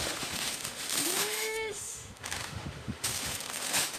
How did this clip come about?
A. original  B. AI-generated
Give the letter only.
B